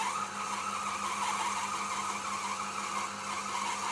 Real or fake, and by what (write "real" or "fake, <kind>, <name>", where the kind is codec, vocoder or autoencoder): real